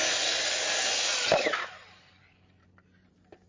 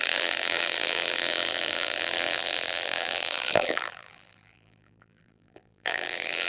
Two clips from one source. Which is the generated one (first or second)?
second